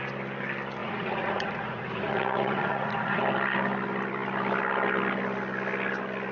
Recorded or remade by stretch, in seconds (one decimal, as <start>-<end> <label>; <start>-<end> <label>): 0.0-0.8 recorded; 0.8-3.2 remade; 3.2-6.3 recorded